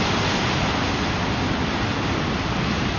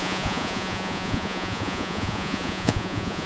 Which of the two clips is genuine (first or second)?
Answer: first